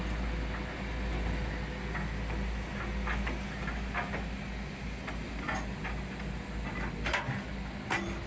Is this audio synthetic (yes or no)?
no